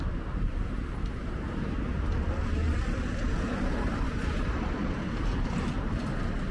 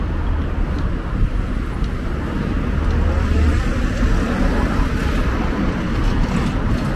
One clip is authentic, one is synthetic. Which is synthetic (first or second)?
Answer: first